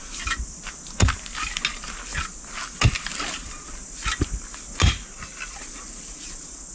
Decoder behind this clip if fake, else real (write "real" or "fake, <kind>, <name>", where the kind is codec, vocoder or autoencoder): real